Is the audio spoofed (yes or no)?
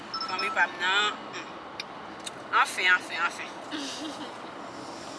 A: no